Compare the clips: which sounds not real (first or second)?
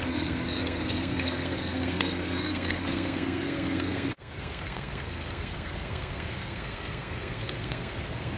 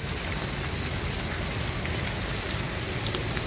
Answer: first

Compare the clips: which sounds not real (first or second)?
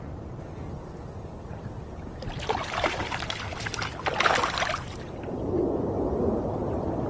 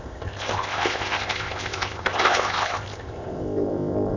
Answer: second